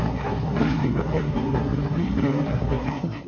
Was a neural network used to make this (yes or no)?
yes